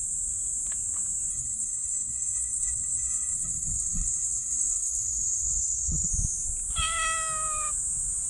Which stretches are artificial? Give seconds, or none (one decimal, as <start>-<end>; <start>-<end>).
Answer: 1.3-6.1